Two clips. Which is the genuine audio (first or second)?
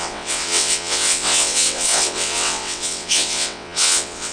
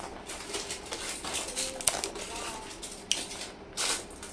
second